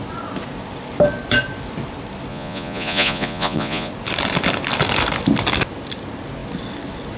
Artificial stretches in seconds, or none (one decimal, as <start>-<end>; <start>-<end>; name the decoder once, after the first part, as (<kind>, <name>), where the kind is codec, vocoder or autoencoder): 2.3-3.9 (vocoder, Vocos)